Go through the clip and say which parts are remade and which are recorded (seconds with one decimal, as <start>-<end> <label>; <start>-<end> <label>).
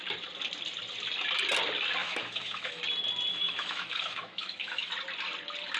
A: 0.0-2.0 recorded; 2.0-2.8 remade; 2.8-3.3 recorded; 3.3-4.9 remade; 4.9-5.8 recorded